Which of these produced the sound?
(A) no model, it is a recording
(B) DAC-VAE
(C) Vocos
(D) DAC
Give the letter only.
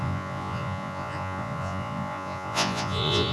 C